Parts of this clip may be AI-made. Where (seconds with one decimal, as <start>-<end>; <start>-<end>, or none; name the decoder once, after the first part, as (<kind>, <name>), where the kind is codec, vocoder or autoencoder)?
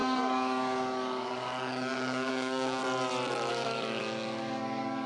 0.0-2.8 (codec, DAC); 3.5-5.1